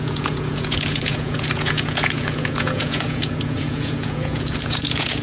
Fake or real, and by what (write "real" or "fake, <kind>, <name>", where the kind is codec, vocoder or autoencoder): fake, vocoder, Vocos